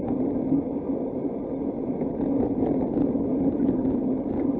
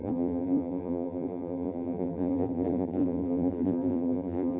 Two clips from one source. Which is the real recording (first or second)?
first